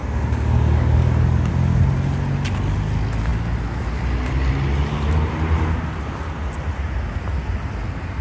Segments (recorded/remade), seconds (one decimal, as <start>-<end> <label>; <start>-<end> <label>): 0.0-1.5 remade; 1.5-8.2 recorded